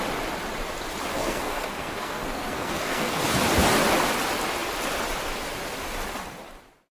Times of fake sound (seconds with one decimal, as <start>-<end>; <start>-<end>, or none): 1.1-3.2